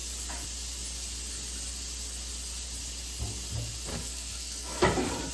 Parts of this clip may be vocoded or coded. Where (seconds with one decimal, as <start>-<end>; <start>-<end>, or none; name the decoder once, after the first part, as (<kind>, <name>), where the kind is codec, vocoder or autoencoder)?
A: 3.9-4.8 (codec, SNAC)